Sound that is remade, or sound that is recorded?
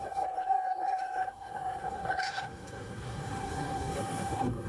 remade